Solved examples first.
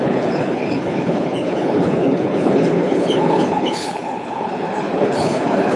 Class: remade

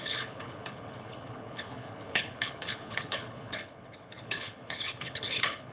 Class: remade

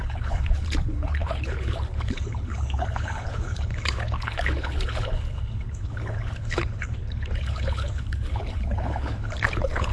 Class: remade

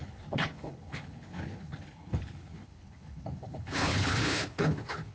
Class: remade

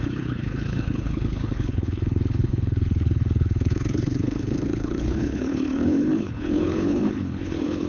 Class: remade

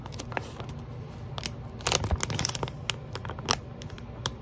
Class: recorded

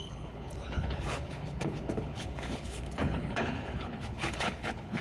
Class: remade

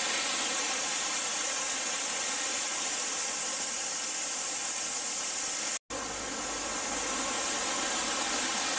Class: recorded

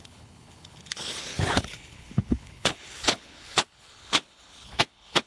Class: remade